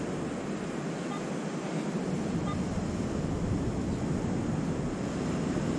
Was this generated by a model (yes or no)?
no